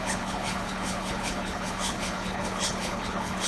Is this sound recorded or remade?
remade